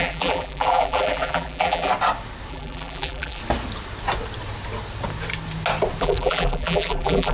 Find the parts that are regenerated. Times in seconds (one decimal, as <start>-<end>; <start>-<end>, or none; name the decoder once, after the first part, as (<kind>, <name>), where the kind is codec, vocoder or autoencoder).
0.0-1.9 (vocoder, BigVGAN v2); 2.5-3.4; 6.0-7.3